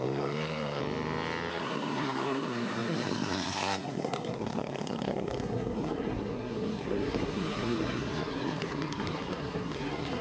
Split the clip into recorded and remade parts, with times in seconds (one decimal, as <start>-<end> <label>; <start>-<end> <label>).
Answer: 0.0-0.8 remade; 0.8-1.5 recorded; 1.5-10.2 remade